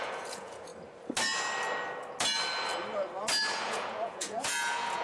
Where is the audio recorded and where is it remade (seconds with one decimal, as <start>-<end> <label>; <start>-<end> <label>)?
0.0-0.7 remade; 0.7-3.7 recorded; 3.7-5.0 remade